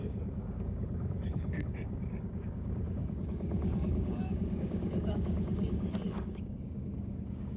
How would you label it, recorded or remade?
remade